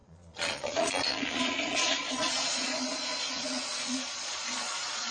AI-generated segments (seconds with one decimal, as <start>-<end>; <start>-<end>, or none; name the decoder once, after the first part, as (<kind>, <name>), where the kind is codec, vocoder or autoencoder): 0.0-5.1 (vocoder, Vocos)